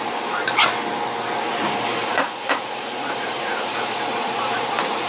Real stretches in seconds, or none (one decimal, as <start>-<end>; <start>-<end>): 0.0-2.0